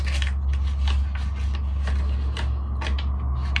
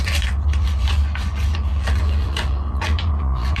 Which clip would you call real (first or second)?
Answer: first